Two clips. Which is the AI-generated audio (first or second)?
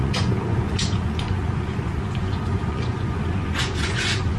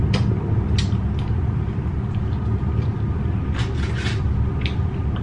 first